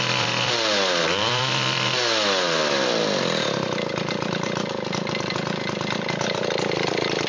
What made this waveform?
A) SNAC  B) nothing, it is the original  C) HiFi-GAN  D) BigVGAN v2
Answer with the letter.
D